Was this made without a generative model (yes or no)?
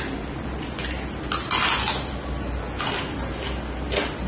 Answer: yes